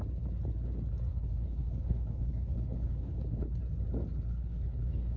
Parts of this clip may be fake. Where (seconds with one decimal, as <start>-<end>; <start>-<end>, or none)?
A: 1.1-3.6; 4.3-5.2